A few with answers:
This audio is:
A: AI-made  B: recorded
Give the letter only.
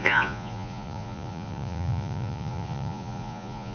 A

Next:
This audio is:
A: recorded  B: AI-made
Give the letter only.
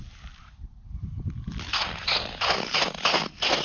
A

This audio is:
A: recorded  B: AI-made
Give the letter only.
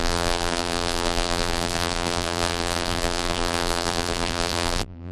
B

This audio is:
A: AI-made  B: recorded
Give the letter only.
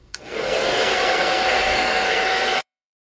A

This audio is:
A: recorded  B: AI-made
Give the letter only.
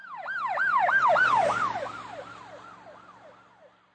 A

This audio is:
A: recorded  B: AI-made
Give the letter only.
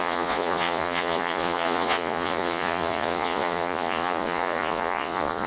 B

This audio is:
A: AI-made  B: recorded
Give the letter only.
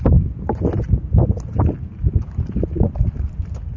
B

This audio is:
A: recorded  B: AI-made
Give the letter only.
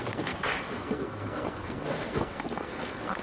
B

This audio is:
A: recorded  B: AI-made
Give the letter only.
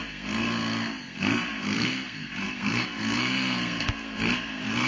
B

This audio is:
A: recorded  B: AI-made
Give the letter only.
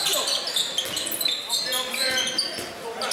A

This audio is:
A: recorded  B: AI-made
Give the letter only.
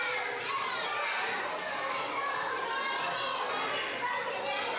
A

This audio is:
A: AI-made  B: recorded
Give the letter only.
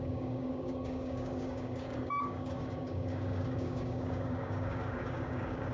A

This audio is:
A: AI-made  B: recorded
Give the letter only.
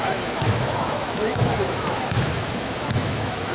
A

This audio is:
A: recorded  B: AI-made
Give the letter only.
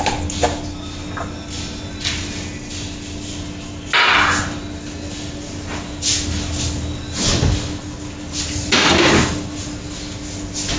A